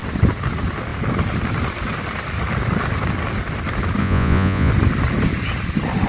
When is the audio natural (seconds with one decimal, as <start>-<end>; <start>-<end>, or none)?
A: 0.0-4.0; 4.7-6.1